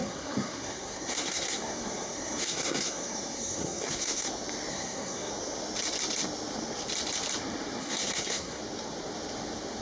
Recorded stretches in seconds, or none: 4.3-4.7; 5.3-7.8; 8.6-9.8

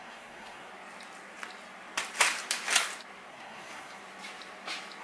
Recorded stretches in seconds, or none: 0.7-3.3; 4.0-5.0

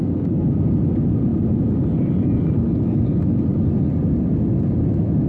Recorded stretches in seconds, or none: 0.0-5.3

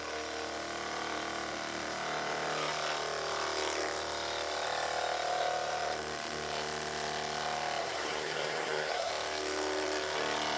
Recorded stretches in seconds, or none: 0.0-7.8; 9.1-10.6

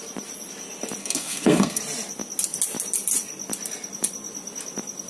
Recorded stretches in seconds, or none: 0.0-1.0; 1.8-5.1